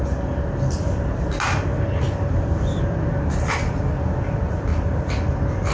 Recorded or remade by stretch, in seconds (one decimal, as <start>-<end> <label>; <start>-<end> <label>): 0.0-5.7 recorded